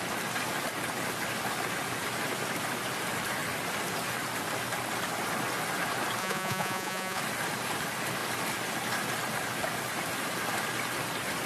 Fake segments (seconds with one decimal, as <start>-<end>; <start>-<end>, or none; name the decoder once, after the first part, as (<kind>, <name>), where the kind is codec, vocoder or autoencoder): 6.2-7.2 (vocoder, Vocos)